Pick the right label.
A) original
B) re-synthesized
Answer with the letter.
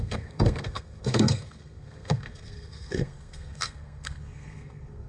B